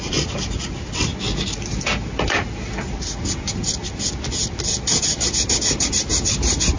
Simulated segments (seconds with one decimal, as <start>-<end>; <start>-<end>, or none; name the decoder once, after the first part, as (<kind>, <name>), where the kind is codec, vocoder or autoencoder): none